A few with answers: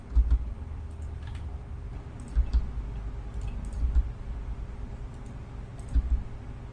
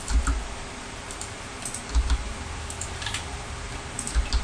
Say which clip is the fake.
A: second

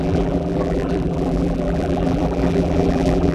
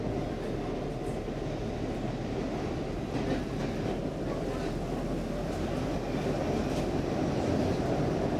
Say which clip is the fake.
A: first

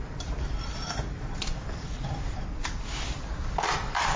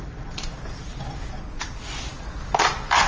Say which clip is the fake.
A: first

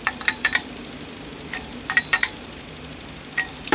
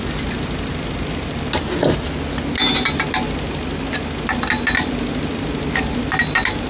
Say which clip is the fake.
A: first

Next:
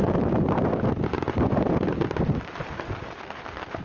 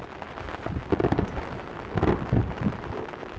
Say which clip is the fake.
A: first